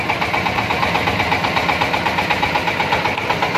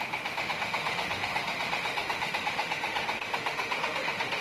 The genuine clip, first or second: first